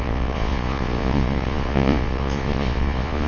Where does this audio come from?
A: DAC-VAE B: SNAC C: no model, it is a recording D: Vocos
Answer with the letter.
D